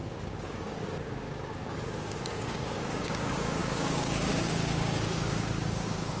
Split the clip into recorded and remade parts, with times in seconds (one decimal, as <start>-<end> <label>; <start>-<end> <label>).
0.0-6.2 remade

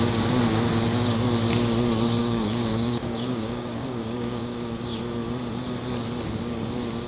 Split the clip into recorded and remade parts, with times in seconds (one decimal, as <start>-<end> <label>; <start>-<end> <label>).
0.0-2.2 recorded; 2.2-5.0 remade; 5.0-7.1 recorded

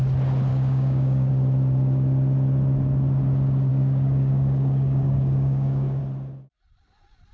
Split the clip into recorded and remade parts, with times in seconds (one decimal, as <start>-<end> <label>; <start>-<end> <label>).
0.0-0.5 recorded; 0.5-1.3 remade; 1.3-3.7 recorded; 3.7-6.0 remade; 6.0-7.3 recorded

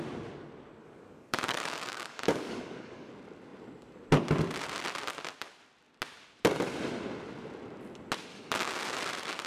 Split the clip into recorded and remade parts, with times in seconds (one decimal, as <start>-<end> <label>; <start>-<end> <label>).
0.0-0.8 recorded; 0.8-3.1 remade; 3.1-8.3 recorded; 8.3-8.8 remade; 8.8-9.5 recorded

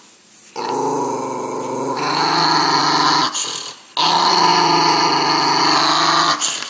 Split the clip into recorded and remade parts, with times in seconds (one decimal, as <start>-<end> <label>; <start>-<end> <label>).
0.0-6.7 recorded